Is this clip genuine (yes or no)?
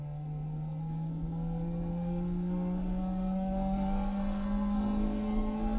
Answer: no